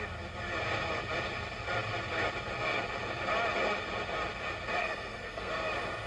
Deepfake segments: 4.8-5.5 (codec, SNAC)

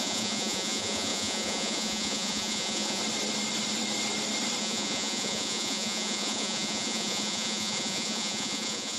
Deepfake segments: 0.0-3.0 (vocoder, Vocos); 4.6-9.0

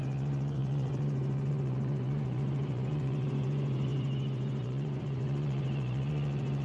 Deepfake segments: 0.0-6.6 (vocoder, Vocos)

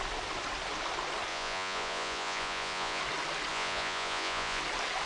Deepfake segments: 1.3-3.0 (vocoder, Vocos); 3.5-4.6